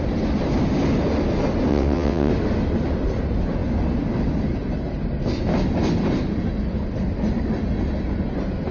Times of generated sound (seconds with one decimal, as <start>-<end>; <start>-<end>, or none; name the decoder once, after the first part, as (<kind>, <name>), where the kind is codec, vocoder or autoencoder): 1.7-2.3 (vocoder, WaveNeXt)